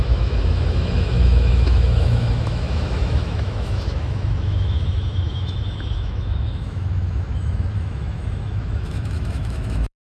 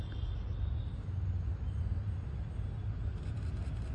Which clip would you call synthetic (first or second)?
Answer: first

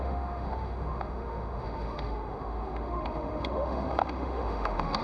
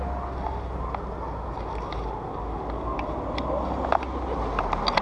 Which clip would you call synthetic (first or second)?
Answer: first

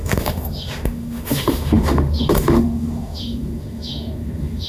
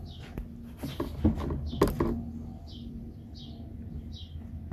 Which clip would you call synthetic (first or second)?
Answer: first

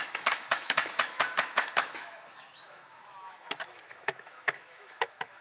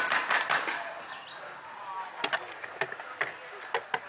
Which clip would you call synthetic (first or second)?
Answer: first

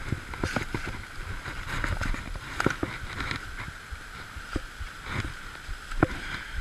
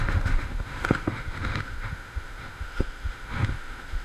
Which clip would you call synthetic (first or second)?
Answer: second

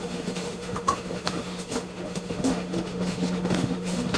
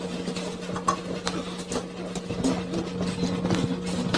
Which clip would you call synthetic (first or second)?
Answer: first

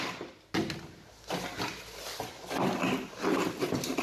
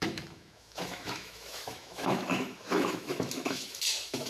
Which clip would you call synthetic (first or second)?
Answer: second